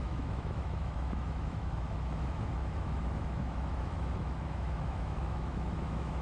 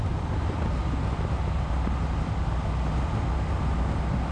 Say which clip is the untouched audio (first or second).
second